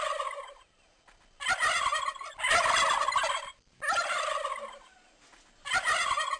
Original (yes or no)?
yes